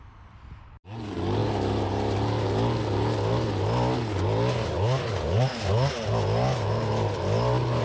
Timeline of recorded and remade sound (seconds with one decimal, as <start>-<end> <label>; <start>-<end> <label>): 0.0-7.8 recorded